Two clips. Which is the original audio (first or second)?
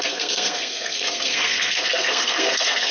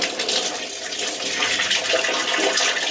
second